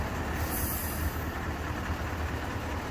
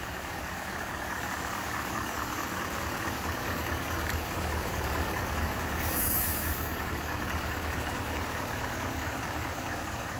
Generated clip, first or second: second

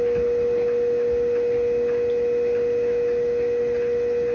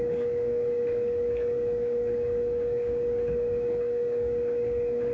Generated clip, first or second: second